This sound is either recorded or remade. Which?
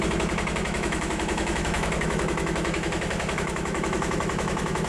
remade